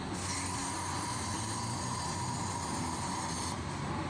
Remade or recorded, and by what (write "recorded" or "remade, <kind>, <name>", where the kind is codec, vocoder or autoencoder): recorded